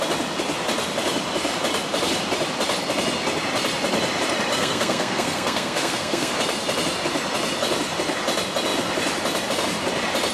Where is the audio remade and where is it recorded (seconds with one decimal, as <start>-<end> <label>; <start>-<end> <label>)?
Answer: 0.0-4.5 recorded; 4.5-6.3 remade; 6.3-10.3 recorded